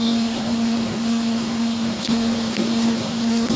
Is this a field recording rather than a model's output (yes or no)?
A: no